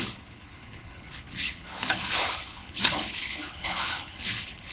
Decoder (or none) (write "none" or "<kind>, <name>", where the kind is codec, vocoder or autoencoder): codec, HILCodec